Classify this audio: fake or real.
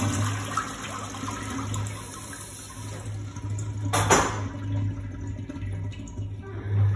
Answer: real